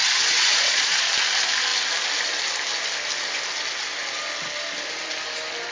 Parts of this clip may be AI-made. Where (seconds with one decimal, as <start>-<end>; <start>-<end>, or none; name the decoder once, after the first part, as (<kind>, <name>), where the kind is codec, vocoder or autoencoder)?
0.0-1.1 (vocoder, Vocos)